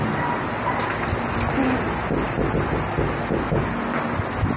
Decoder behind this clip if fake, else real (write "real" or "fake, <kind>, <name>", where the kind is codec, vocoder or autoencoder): real